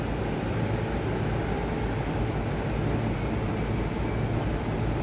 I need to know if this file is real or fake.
real